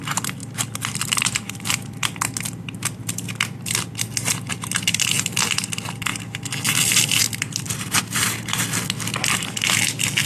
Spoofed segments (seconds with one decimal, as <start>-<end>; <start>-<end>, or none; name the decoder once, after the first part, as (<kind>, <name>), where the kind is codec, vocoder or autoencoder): 0.4-1.3 (vocoder, BigVGAN v2); 6.1-9.8